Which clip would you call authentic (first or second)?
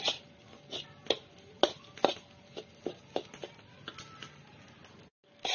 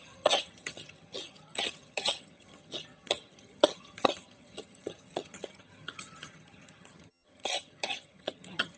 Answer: first